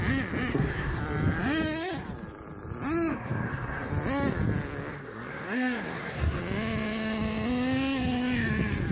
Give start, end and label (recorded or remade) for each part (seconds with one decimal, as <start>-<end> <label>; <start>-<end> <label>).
0.0-0.5 recorded; 0.5-1.0 remade; 1.0-3.1 recorded; 3.1-3.9 remade; 3.9-4.9 recorded; 4.9-6.4 remade; 6.4-8.9 recorded